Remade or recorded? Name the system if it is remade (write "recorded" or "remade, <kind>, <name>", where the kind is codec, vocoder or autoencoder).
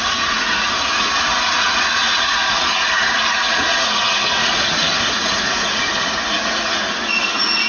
remade, vocoder, Vocos